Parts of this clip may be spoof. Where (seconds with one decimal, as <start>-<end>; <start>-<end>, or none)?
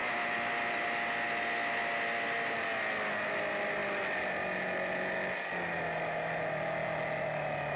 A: none